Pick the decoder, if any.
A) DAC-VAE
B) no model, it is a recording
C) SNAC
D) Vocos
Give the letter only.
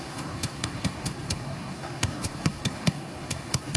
C